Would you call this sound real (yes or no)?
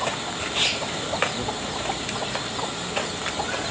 yes